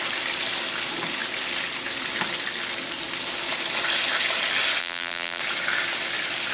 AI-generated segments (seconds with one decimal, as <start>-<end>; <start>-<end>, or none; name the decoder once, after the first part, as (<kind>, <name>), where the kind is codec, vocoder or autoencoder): 4.8-5.4 (vocoder, BigVGAN v2)